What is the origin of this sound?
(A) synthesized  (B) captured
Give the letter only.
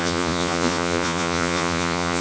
A